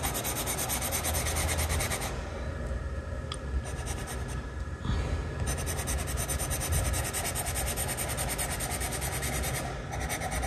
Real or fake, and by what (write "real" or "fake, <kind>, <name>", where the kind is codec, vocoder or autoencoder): real